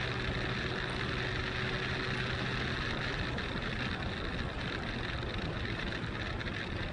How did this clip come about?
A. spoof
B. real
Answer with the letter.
B